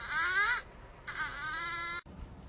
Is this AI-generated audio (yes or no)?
no